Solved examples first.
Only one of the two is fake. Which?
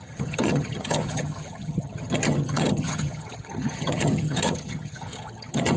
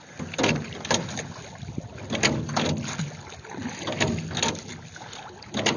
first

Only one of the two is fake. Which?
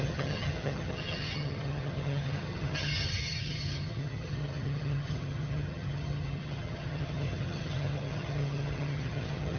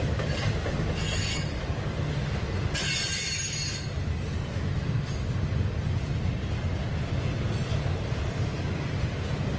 first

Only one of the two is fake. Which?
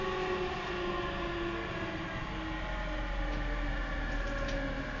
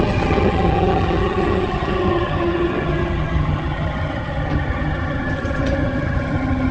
second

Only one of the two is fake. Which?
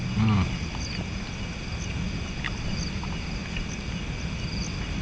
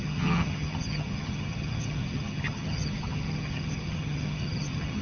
second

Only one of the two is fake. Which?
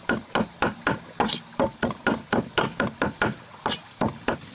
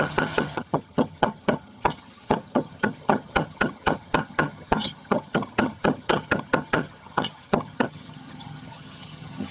second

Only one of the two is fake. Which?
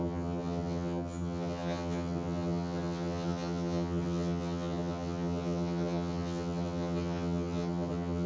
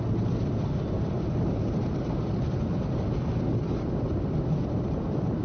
first